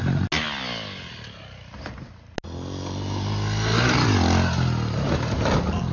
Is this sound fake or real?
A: real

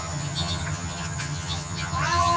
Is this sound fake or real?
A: fake